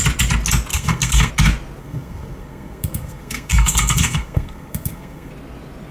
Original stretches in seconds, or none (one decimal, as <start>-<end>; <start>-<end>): 0.0-0.7; 1.3-1.8; 5.3-5.9